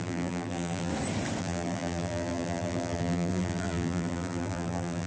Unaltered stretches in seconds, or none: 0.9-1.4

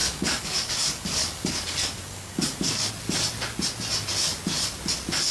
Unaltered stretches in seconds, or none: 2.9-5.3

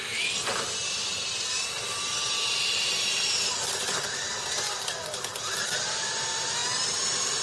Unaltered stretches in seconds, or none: 0.0-7.4

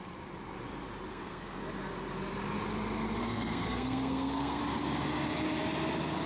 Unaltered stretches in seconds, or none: 0.0-1.1; 1.6-3.2; 4.6-6.3